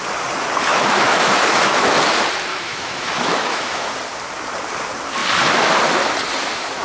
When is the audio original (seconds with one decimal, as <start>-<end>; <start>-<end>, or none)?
0.0-0.7; 1.9-2.5; 3.9-6.8